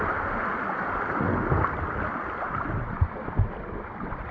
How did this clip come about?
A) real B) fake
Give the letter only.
A